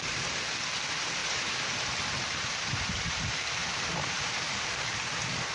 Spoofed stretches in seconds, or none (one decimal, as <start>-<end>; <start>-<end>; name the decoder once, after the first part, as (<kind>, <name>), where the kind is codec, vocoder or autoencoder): 1.2-4.5 (vocoder, BigVGAN v2)